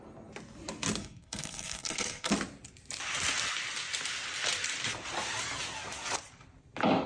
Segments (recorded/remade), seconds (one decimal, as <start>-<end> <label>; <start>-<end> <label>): 0.0-1.0 recorded; 1.0-2.3 remade; 2.3-7.1 recorded